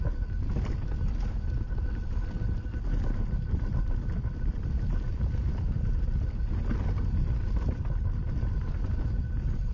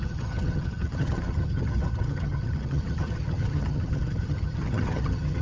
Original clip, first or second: first